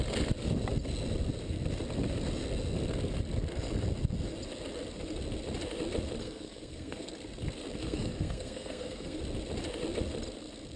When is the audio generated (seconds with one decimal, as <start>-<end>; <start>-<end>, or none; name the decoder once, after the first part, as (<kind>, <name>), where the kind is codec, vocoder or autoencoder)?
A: 6.2-7.1 (codec, SNAC); 7.8-9.2